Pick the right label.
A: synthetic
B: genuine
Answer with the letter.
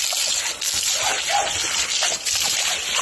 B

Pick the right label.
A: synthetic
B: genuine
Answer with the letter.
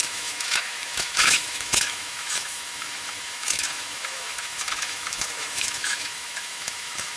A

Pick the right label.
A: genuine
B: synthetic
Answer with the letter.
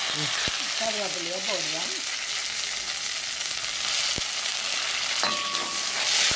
A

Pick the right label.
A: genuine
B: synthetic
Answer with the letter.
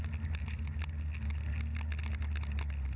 A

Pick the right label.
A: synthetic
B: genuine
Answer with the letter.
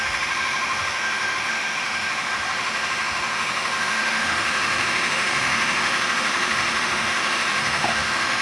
A